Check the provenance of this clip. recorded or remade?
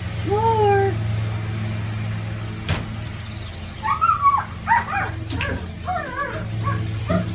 recorded